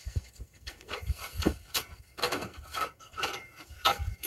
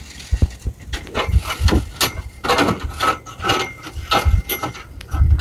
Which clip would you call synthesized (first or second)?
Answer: first